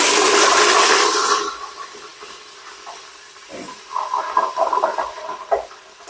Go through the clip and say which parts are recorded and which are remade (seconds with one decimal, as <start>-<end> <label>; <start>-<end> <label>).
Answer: 0.0-6.1 recorded